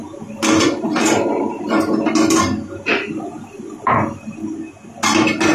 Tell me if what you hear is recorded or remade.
recorded